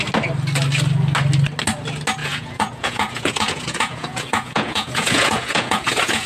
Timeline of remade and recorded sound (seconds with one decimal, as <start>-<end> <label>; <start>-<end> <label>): 0.0-2.2 recorded; 2.2-6.3 remade